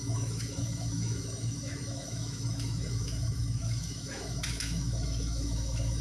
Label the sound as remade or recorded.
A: remade